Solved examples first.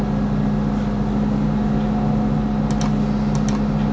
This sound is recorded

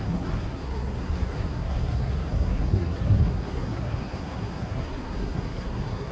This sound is remade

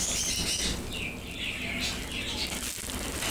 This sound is recorded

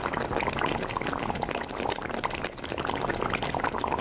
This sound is recorded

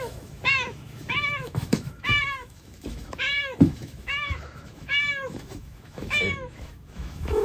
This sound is remade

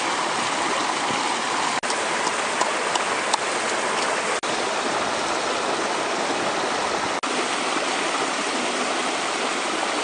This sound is recorded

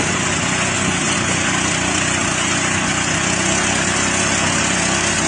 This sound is remade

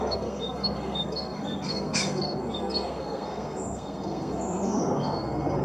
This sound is remade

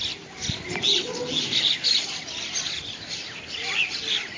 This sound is recorded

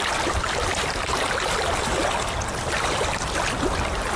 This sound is recorded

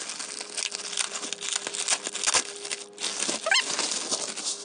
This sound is recorded